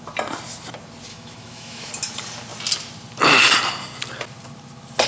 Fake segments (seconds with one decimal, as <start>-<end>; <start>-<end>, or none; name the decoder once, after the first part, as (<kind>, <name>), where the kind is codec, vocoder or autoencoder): 1.1-1.9 (autoencoder, DAC-VAE)